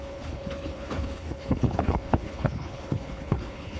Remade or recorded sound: remade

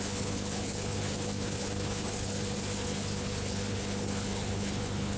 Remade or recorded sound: remade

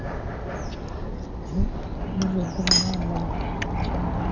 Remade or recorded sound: recorded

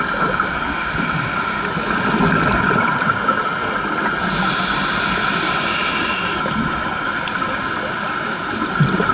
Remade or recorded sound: recorded